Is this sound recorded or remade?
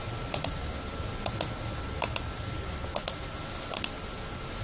recorded